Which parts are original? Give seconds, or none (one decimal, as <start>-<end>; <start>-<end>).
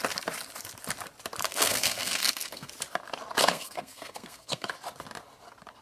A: 0.0-1.5; 2.7-3.4; 4.7-5.8